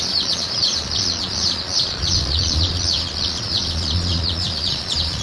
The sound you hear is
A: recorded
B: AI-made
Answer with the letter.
B